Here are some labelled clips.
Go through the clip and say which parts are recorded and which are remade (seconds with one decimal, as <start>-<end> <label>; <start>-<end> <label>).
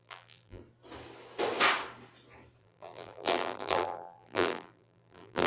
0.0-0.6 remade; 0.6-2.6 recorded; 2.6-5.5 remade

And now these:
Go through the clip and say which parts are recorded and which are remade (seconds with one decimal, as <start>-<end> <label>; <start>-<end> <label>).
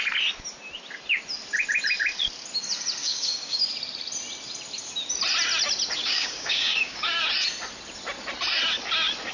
0.0-3.0 recorded; 3.0-3.6 remade; 3.6-6.0 recorded; 6.0-7.2 remade; 7.2-9.3 recorded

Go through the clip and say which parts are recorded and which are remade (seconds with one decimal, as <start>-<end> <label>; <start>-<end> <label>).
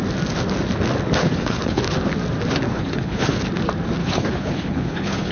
0.0-1.2 recorded; 1.2-1.8 remade; 1.8-2.7 recorded; 2.7-3.4 remade; 3.4-4.0 recorded; 4.0-5.3 remade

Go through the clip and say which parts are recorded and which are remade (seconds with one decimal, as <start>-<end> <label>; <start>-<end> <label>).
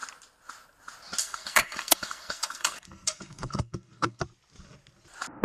0.0-1.2 recorded; 1.2-4.2 remade; 4.2-5.4 recorded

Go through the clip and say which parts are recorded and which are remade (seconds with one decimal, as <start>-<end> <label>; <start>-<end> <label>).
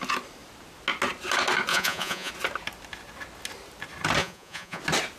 0.0-1.7 recorded; 1.7-2.3 remade; 2.3-4.2 recorded; 4.2-4.8 remade; 4.8-5.2 recorded